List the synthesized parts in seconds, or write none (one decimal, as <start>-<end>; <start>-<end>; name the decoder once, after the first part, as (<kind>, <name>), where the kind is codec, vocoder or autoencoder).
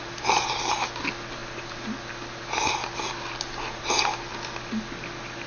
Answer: none